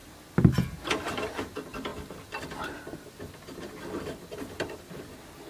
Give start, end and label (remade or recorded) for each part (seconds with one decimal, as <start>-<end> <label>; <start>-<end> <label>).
0.0-5.5 recorded